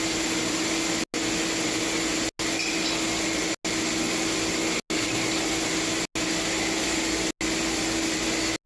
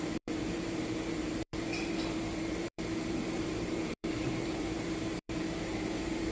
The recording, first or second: first